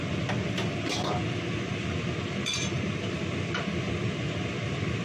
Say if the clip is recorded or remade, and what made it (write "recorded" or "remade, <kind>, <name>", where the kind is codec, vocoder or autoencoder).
remade, vocoder, BigVGAN v2